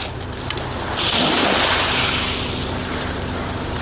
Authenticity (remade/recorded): recorded